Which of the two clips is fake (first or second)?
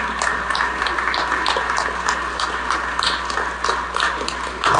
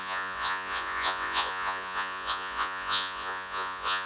second